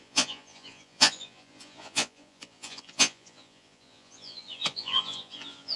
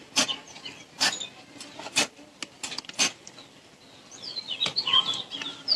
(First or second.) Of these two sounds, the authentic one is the second